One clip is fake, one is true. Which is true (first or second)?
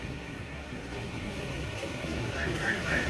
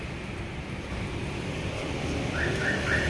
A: second